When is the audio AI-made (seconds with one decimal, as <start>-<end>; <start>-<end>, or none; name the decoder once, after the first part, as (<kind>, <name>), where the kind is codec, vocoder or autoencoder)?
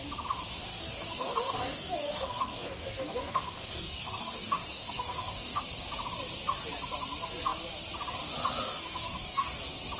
0.7-5.6 (codec, DAC); 8.6-9.6